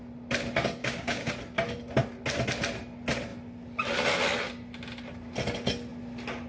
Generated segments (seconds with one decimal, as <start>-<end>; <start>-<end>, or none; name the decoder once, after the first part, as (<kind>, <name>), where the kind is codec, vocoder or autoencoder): 0.8-1.3 (codec, DAC)